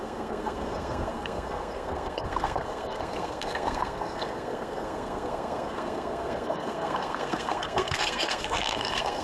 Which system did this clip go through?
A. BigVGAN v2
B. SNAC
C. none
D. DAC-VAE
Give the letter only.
B